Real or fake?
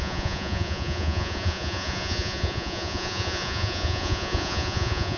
fake